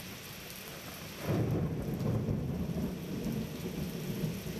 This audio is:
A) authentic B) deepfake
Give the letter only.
A